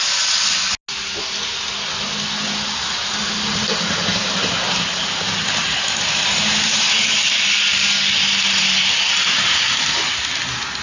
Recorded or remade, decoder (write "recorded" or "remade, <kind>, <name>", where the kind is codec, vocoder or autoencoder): recorded